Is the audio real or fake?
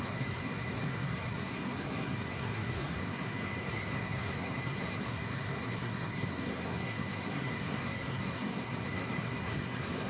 fake